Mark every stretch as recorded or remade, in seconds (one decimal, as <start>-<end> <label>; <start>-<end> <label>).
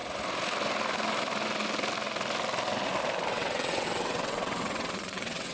0.0-3.3 recorded; 3.3-5.5 remade